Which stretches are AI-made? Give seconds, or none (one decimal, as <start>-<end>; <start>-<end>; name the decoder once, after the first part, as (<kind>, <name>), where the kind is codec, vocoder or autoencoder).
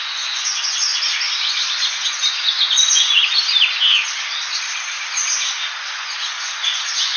0.0-0.9 (vocoder, Vocos); 1.9-3.2; 5.8-7.2